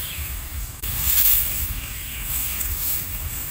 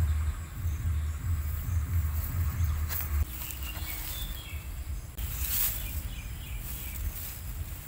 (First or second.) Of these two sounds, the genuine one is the second